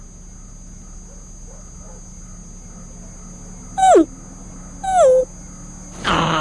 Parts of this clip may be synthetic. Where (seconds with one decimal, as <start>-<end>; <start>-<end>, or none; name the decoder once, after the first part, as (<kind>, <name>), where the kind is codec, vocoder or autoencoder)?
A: none